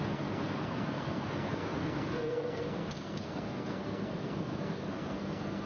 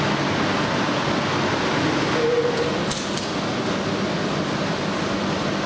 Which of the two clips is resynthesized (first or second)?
first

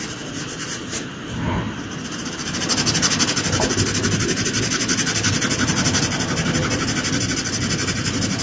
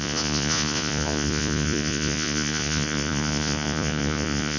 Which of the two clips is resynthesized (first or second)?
second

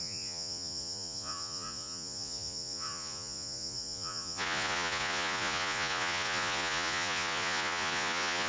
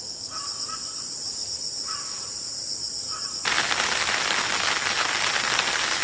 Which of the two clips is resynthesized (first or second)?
first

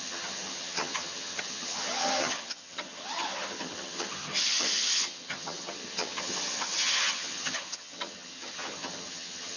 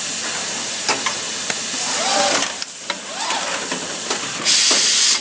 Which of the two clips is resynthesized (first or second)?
first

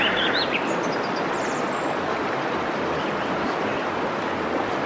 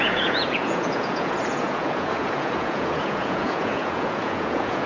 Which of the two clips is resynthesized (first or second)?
second